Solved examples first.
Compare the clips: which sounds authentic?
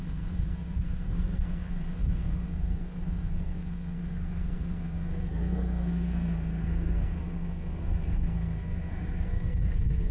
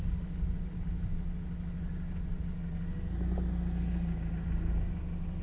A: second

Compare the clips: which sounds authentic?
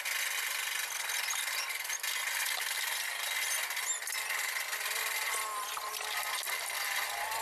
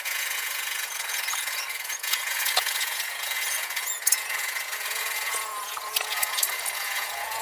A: first